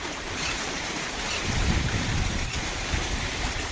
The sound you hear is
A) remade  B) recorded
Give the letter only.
A